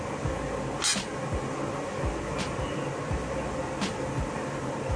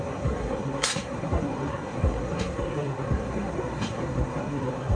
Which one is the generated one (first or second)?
second